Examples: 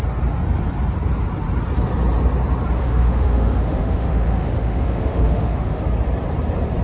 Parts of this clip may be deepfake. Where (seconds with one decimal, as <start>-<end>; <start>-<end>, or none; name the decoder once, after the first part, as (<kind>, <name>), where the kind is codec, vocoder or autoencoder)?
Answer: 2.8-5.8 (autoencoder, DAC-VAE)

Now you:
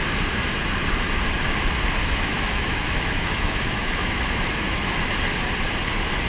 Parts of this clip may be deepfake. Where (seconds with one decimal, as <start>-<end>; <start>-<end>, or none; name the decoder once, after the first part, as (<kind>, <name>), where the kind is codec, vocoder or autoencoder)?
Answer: 2.0-4.9 (autoencoder, DAC-VAE)

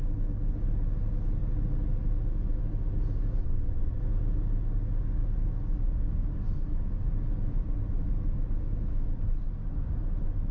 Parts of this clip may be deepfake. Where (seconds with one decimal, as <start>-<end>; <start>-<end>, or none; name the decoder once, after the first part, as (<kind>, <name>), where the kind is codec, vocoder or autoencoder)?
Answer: 3.4-4.0 (vocoder, WaveNeXt)

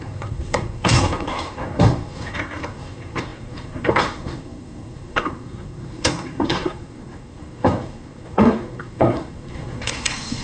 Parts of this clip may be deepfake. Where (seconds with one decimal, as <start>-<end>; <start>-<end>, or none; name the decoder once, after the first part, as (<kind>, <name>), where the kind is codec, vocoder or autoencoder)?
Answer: 0.0-10.4 (codec, SNAC)

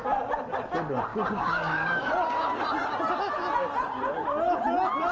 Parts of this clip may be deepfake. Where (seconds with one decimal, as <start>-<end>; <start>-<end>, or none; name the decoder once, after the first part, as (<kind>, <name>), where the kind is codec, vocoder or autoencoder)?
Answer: 1.1-2.1 (codec, DAC)

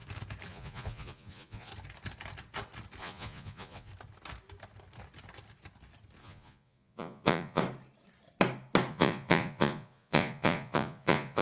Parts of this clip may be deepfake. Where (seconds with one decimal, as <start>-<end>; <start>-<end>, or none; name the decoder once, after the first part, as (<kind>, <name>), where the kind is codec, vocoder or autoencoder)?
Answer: 0.5-1.7 (vocoder, Vocos); 3.0-3.9; 6.2-7.6; 8.9-11.4